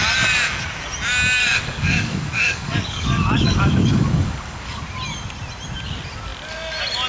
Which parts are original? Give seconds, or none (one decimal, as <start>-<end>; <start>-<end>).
0.0-1.4; 4.8-7.1